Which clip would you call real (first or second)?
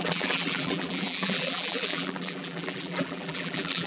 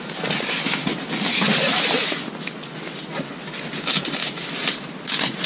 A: second